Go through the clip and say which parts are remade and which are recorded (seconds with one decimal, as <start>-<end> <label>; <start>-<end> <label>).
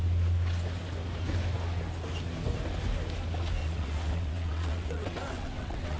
0.0-3.6 recorded; 3.6-6.0 remade